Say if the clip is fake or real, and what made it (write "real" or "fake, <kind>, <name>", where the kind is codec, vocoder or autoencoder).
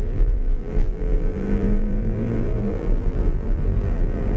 fake, vocoder, BigVGAN v2